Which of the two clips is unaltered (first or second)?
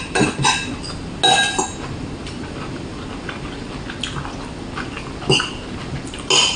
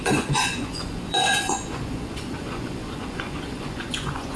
first